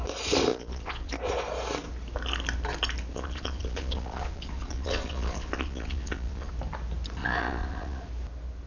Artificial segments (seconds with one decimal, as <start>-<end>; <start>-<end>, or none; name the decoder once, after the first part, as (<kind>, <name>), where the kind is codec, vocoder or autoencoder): 0.5-1.1 (vocoder, Vocos); 3.1-6.5; 7.2-8.1